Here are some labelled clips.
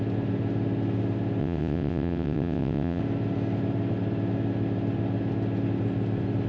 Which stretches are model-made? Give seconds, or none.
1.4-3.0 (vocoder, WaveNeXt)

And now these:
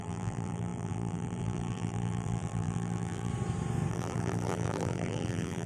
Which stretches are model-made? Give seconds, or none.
0.0-3.3 (vocoder, BigVGAN v2); 3.9-5.7

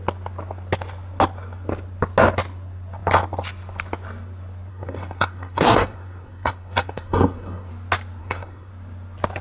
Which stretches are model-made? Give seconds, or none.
4.7-7.7 (codec, SNAC); 8.2-8.7

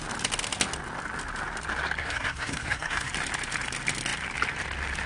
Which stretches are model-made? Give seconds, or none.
2.0-3.1 (codec, SNAC)

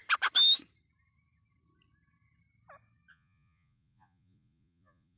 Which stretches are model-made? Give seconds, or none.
3.1-5.2 (vocoder, Vocos)

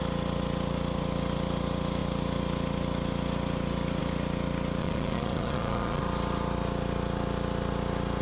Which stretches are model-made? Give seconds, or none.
4.8-6.0 (vocoder, Vocos)

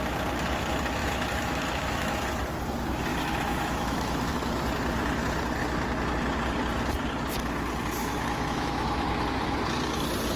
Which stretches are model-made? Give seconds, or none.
1.0-2.3 (autoencoder, DAC-VAE); 3.1-4.3; 8.0-9.6